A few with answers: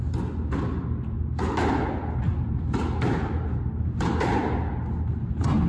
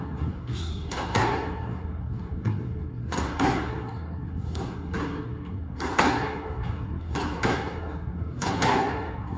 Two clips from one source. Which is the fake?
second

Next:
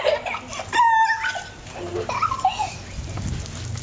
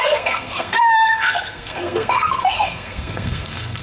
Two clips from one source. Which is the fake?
second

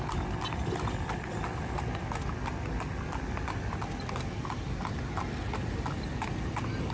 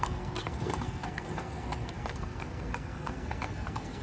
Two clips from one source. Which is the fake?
second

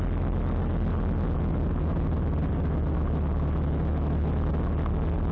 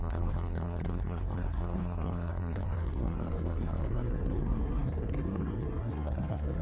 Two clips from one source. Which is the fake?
second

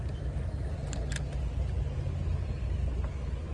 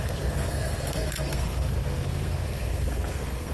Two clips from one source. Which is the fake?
second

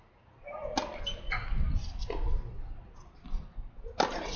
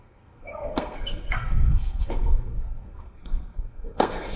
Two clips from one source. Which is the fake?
second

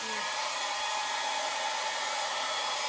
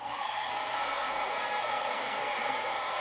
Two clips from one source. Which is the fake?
second